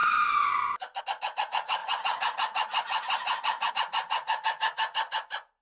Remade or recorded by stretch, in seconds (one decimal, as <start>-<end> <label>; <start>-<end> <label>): 0.0-5.6 recorded